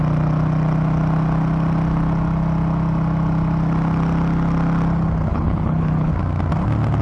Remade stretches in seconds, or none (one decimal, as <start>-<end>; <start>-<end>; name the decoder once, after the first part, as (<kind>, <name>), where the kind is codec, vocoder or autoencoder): 5.3-6.1 (codec, HILCodec)